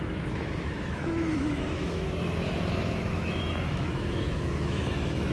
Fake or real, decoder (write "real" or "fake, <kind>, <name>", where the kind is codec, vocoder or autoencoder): fake, autoencoder, DAC-VAE